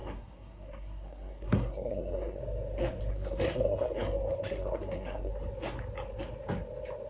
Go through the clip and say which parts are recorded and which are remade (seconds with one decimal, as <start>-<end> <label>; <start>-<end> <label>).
0.0-2.4 remade; 2.4-3.1 recorded; 3.1-5.3 remade; 5.3-7.1 recorded